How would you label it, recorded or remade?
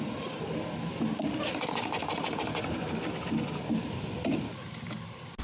recorded